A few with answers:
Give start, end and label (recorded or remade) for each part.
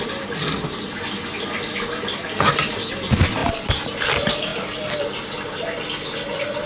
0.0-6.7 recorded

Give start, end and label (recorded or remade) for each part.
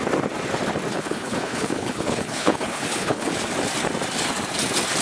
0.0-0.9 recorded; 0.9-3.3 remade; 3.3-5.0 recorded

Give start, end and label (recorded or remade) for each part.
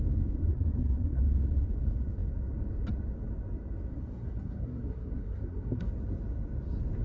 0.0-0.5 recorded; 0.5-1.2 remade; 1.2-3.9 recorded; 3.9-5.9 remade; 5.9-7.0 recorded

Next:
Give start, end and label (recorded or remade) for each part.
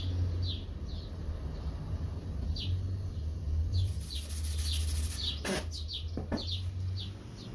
0.0-7.5 recorded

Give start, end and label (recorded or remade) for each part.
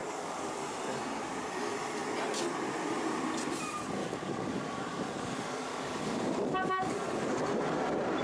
0.0-0.6 remade; 0.6-4.0 recorded; 4.0-7.4 remade; 7.4-8.2 recorded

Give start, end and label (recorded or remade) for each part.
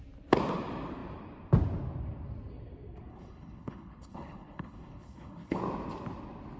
0.0-3.1 recorded; 3.1-5.6 remade; 5.6-6.6 recorded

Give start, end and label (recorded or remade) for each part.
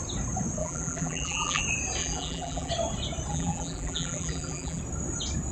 0.0-0.6 recorded; 0.6-1.6 remade; 1.6-2.0 recorded; 2.0-2.7 remade; 2.7-3.3 recorded; 3.3-4.8 remade; 4.8-5.5 recorded